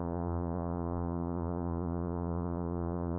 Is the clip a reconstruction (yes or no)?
yes